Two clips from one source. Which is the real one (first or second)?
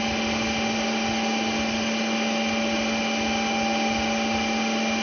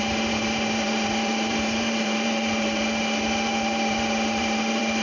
first